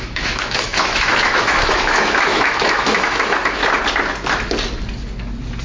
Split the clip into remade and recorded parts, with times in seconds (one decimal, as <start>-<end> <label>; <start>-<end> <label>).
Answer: 0.0-3.6 remade; 3.6-5.6 recorded